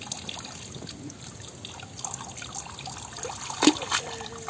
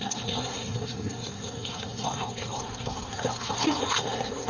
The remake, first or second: second